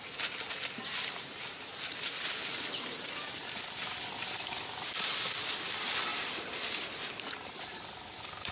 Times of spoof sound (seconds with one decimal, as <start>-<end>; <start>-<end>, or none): none